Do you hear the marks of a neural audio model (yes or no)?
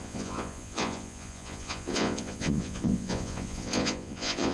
yes